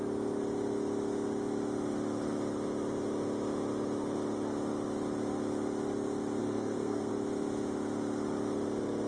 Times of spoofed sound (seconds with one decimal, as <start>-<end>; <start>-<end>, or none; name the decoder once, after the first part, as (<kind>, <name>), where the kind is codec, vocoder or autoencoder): 6.4-7.1 (codec, SNAC)